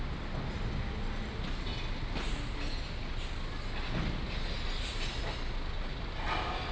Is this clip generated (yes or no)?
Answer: no